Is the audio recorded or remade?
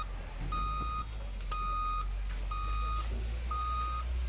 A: recorded